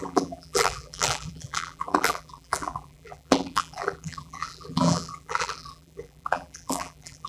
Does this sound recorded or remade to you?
remade